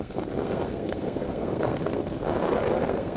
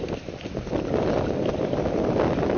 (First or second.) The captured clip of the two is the second